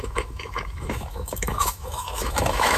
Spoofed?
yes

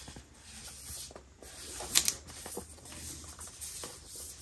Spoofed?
no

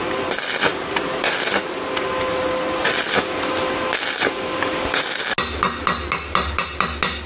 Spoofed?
no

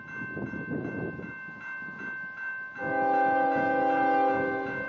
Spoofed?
no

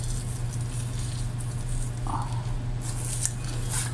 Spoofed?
no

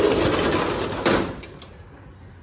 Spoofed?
no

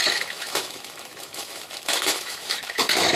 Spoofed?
yes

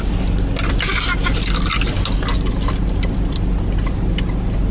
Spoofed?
no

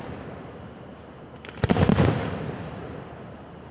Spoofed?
no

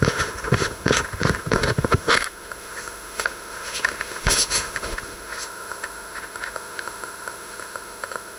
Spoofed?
yes